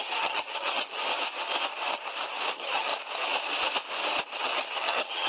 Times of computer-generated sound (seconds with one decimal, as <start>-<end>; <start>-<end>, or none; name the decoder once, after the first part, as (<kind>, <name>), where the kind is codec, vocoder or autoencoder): 0.0-1.0 (vocoder, HiFi-GAN); 2.5-2.9; 4.4-5.3